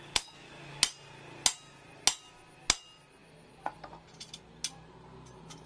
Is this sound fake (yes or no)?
no